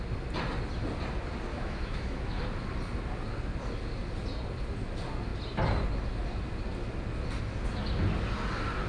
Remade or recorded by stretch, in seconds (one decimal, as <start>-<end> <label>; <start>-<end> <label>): 0.0-1.5 recorded; 1.5-2.4 remade; 2.4-8.9 recorded